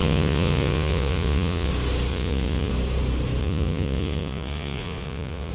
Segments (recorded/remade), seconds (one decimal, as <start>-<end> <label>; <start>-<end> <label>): 0.0-1.7 remade; 1.7-2.1 recorded; 2.1-2.7 remade; 2.7-3.4 recorded; 3.4-5.5 remade